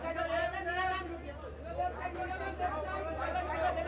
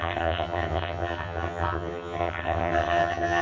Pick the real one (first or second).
first